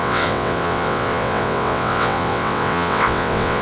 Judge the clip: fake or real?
fake